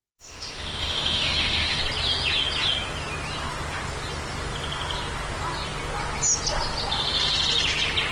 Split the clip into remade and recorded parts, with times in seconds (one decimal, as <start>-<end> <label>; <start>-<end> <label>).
0.0-1.8 remade; 1.8-8.1 recorded